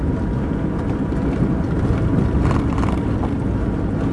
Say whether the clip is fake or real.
real